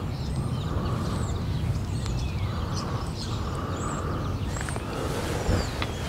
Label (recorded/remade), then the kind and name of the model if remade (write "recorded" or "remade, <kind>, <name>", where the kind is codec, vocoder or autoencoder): recorded